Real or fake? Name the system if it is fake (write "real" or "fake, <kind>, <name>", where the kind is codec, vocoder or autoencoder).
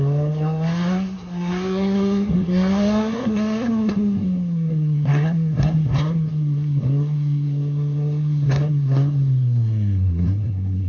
fake, codec, SNAC